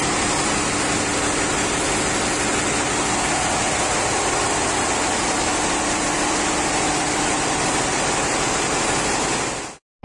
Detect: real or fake real